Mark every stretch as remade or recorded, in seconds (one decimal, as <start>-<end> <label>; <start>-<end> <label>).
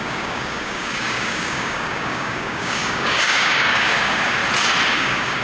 0.0-4.4 remade; 4.4-4.9 recorded; 4.9-5.4 remade